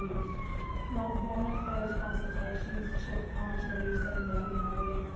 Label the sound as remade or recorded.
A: remade